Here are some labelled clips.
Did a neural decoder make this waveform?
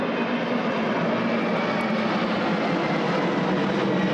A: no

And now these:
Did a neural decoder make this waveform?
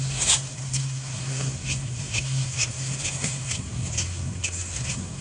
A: yes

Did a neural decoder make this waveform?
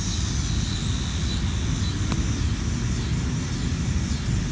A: no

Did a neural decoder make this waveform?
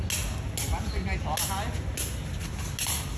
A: no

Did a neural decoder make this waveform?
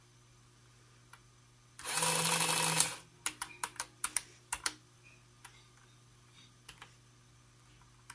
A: no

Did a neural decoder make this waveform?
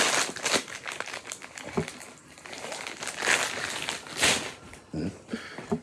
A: no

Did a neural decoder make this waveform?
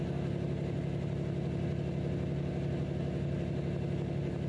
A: no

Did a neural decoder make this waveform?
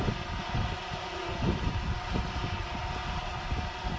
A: no